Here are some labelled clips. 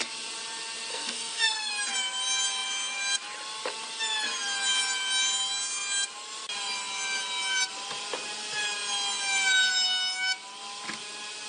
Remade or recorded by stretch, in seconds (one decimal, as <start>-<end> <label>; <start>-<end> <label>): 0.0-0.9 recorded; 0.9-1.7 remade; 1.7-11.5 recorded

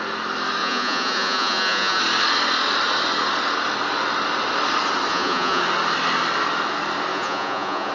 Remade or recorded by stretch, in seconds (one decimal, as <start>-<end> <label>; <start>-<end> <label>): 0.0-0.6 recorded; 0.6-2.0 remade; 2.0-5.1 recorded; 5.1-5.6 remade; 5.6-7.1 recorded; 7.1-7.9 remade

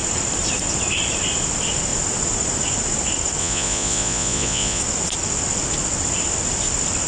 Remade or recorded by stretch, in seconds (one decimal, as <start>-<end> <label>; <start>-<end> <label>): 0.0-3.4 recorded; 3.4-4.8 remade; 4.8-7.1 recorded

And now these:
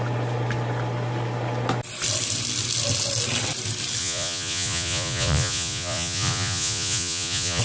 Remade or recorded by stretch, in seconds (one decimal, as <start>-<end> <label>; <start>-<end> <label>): 0.0-4.0 recorded; 4.0-7.6 remade

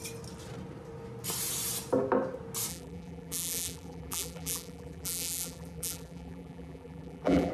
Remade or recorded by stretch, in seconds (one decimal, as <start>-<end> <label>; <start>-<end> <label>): 0.0-2.7 recorded; 2.7-7.5 remade

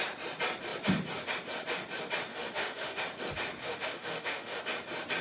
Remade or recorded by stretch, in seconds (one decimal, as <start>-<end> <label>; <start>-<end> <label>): 0.0-2.3 recorded; 2.3-3.0 remade; 3.0-3.6 recorded; 3.6-4.6 remade; 4.6-5.2 recorded